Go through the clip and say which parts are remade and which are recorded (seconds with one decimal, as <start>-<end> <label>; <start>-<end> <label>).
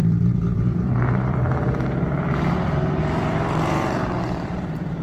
0.0-5.0 remade